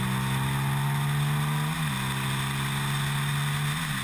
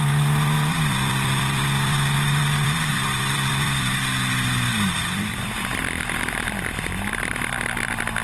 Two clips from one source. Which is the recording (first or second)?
first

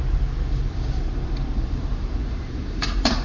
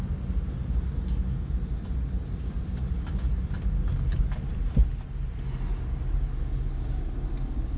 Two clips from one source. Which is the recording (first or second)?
second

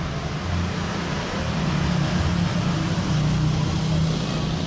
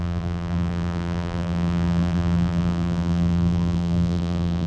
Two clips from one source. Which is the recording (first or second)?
first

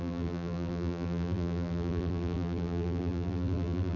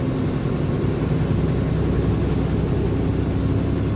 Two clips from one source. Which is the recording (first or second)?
second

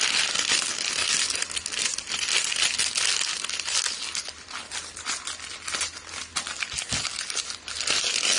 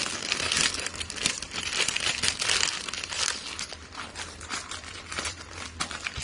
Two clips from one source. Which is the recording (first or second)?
first